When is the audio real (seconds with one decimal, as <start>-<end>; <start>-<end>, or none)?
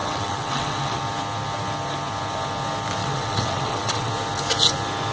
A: 1.0-3.0; 4.1-5.1